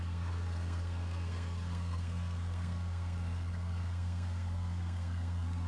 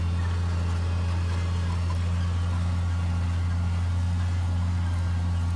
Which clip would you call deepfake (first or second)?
first